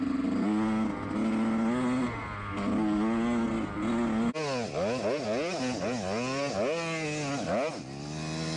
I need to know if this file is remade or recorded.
recorded